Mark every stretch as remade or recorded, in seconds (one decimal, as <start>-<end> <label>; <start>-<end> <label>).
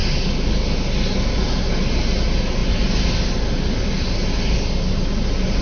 0.0-5.6 recorded